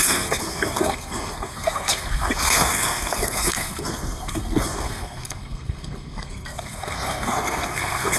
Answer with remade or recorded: remade